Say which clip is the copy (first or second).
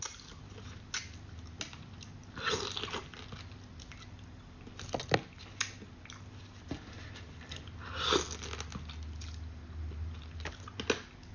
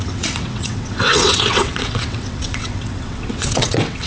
second